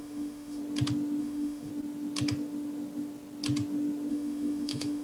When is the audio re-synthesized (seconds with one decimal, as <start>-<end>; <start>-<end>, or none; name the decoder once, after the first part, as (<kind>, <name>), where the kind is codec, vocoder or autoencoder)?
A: 0.0-0.6 (autoencoder, DAC-VAE); 1.2-1.7; 4.1-5.0